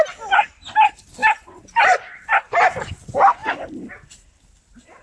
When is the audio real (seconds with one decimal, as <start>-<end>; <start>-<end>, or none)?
0.0-1.2; 2.4-3.4; 4.4-5.0